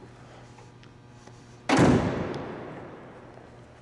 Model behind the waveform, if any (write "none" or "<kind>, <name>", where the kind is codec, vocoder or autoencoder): none